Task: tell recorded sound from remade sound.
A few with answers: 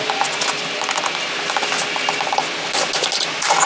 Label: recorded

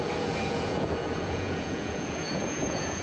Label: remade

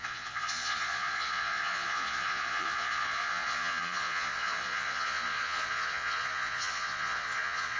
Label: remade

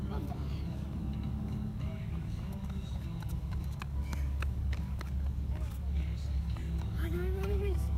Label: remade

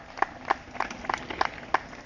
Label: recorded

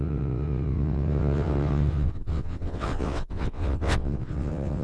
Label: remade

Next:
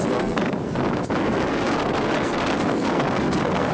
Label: remade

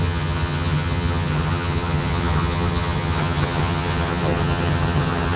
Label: remade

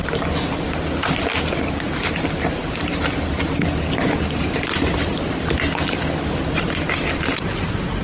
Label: remade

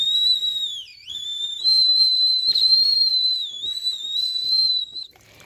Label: remade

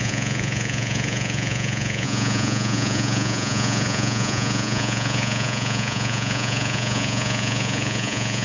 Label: remade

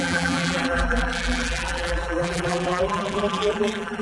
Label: remade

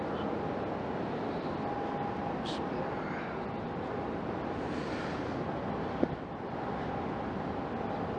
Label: recorded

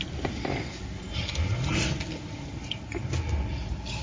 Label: recorded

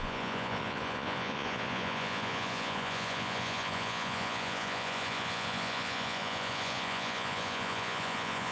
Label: remade